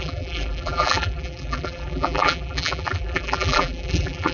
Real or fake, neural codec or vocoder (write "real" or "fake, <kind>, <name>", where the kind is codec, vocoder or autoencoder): fake, vocoder, BigVGAN v2